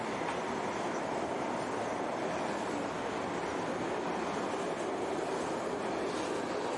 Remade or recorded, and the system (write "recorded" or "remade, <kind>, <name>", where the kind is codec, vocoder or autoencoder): recorded